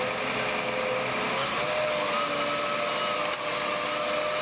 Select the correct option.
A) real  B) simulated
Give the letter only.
A